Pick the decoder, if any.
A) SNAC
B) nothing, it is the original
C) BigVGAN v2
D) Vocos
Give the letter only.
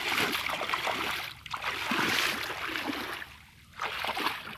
B